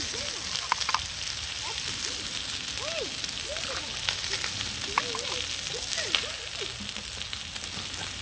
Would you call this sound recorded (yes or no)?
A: yes